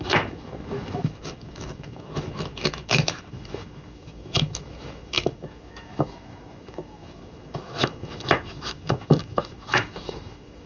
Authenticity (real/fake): fake